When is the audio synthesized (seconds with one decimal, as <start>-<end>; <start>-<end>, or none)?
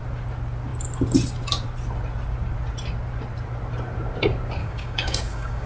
4.6-5.7